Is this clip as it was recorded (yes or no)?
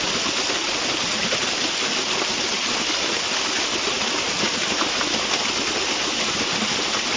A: yes